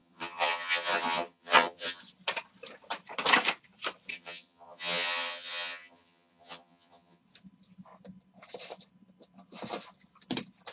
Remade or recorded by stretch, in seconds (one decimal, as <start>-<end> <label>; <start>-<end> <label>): 0.0-2.0 remade; 2.0-4.1 recorded; 4.1-7.2 remade; 7.2-10.7 recorded